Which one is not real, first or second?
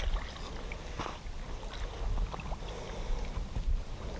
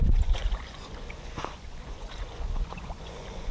second